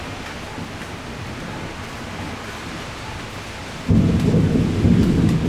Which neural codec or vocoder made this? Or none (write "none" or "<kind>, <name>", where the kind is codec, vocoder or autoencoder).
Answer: none